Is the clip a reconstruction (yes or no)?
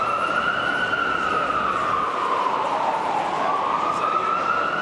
yes